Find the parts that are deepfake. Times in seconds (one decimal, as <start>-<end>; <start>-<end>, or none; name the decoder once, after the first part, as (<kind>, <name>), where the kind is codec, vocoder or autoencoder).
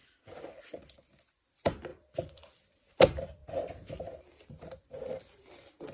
1.3-5.9 (vocoder, BigVGAN v2)